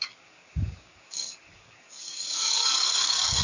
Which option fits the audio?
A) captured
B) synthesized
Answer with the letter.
B